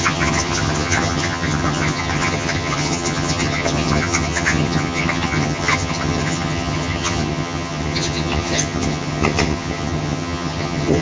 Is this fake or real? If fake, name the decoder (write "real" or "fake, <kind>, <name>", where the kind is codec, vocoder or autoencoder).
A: fake, vocoder, HiFi-GAN